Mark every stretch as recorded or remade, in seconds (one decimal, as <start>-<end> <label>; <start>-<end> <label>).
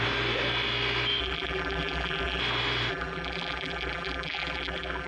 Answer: 0.0-1.2 recorded; 1.2-2.4 remade; 2.4-2.9 recorded; 2.9-5.1 remade